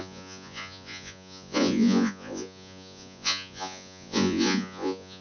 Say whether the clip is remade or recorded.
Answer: remade